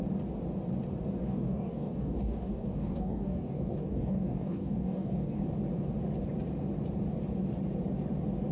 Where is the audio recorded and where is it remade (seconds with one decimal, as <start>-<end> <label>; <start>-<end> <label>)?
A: 0.0-1.2 recorded; 1.2-5.4 remade; 5.4-8.5 recorded